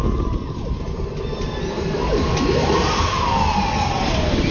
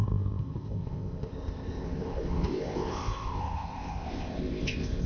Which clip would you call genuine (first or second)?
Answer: first